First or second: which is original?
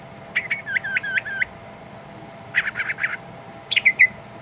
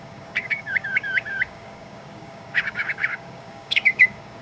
first